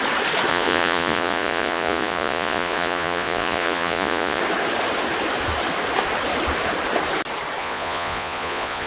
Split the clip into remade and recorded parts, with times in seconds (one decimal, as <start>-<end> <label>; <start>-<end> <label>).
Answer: 0.0-0.5 recorded; 0.5-4.4 remade; 4.4-7.6 recorded; 7.6-8.9 remade